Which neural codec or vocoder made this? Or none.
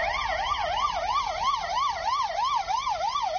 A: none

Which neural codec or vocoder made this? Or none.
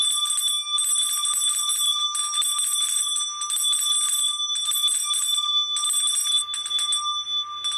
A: none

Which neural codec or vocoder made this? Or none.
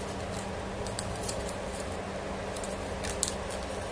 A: none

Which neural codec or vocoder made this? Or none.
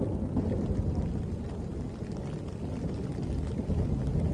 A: none